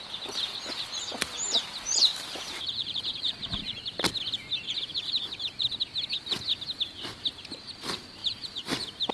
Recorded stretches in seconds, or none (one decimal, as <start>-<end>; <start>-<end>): 0.0-2.1; 4.1-4.6; 5.6-8.2